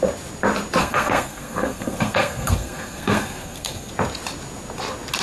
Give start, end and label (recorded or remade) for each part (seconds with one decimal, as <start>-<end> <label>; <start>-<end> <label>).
0.0-0.8 recorded; 0.8-3.9 remade; 3.9-5.2 recorded